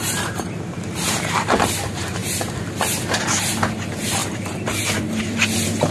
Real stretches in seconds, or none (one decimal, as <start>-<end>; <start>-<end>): 2.2-3.2

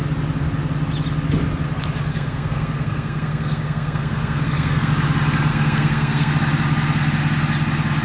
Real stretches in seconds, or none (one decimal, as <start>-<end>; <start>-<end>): 0.0-2.1; 4.9-5.5; 6.3-8.0

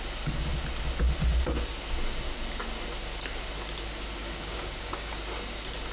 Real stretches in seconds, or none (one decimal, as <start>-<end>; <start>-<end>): 0.0-4.2; 5.1-5.9

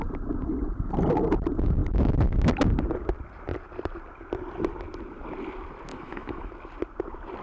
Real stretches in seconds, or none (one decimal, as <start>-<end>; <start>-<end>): 0.0-5.9; 6.5-7.4

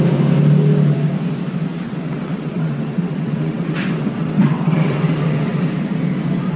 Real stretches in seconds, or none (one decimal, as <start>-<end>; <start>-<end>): 0.0-1.7; 5.7-6.6